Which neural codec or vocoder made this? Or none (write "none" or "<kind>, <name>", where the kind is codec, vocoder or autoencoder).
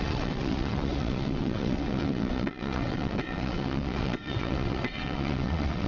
vocoder, WaveNeXt